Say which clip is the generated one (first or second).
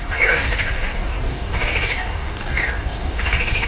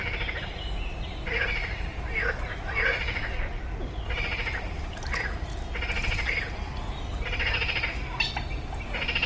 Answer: first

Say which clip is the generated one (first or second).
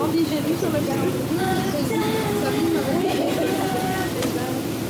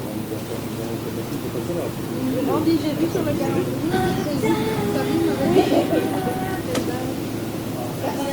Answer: first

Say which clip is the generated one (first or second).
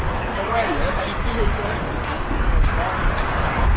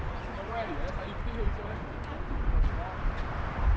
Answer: first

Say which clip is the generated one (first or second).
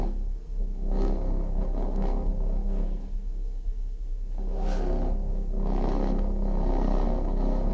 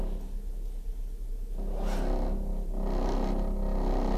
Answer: first